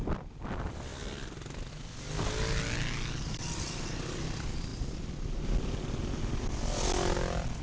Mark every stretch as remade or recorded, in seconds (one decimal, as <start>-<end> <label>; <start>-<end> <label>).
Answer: 0.0-7.6 recorded

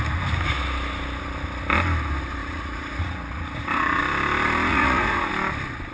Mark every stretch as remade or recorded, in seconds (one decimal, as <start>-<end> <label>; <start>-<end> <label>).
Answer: 0.0-2.4 recorded; 2.4-4.0 remade; 4.0-4.7 recorded; 4.7-5.3 remade; 5.3-5.9 recorded

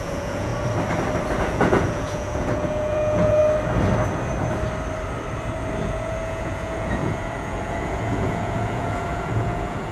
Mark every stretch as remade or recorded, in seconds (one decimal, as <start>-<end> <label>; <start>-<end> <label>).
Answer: 0.0-0.5 remade; 0.5-1.4 recorded; 1.4-3.4 remade; 3.4-5.8 recorded; 5.8-9.9 remade

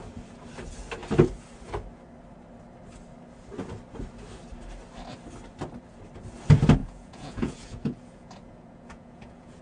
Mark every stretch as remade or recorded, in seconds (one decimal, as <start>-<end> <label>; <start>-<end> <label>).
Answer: 0.0-6.8 recorded; 6.8-9.6 remade